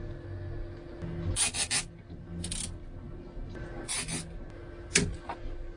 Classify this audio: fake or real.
real